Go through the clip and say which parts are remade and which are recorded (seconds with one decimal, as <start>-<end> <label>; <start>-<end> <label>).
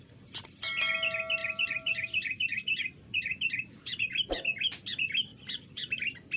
0.0-1.4 recorded; 1.4-4.3 remade; 4.3-5.3 recorded; 5.3-6.0 remade; 6.0-6.4 recorded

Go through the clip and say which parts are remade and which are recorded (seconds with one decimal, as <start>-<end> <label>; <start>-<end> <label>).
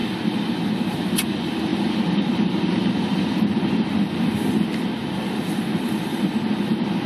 0.0-1.7 recorded; 1.7-3.2 remade; 3.2-5.0 recorded; 5.0-6.3 remade; 6.3-7.1 recorded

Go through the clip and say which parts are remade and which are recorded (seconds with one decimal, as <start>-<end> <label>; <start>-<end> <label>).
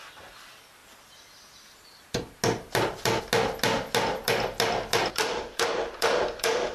0.0-5.1 recorded; 5.1-6.7 remade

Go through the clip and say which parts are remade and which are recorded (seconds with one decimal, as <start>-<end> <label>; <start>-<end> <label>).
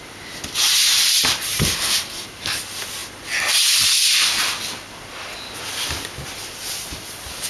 0.0-0.8 recorded; 0.8-2.6 remade; 2.6-7.5 recorded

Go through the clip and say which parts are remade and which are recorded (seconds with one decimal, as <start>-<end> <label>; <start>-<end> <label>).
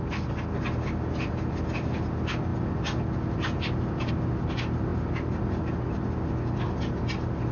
0.0-7.5 recorded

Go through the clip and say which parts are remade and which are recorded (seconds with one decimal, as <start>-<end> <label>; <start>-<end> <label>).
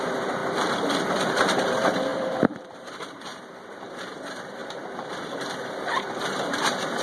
0.0-0.4 remade; 0.4-1.0 recorded; 1.0-7.0 remade